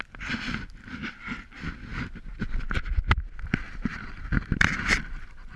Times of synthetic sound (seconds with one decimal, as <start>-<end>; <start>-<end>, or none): 0.0-1.9; 3.3-5.6